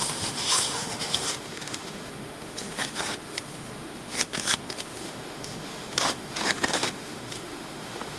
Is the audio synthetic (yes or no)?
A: yes